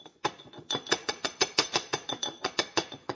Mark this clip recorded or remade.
remade